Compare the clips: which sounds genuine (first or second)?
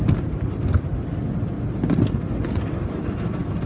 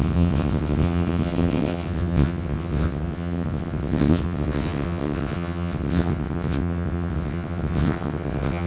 first